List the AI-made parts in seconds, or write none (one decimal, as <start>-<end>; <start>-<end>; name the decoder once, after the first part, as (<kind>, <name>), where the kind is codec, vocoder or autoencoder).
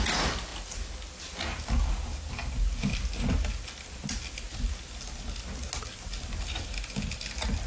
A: none